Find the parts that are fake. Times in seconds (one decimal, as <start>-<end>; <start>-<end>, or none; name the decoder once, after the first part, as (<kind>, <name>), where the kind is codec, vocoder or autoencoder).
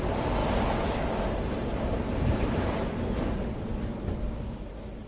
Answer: none